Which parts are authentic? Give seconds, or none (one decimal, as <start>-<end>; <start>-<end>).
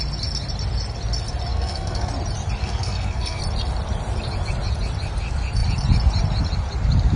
0.0-1.5; 2.1-2.6; 3.4-7.2